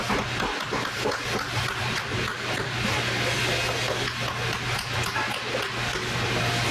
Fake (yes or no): no